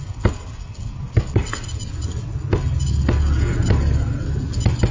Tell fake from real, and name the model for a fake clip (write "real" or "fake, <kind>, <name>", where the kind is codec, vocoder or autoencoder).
real